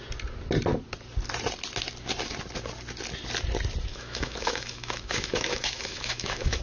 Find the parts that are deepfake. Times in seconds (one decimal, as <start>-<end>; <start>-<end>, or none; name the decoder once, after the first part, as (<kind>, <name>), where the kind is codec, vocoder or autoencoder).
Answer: 3.9-6.6 (autoencoder, DAC-VAE)